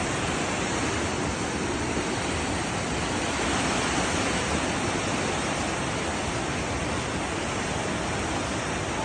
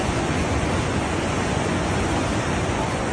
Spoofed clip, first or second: second